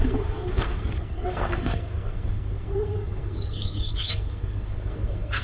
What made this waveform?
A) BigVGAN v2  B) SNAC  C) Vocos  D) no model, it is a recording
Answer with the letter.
B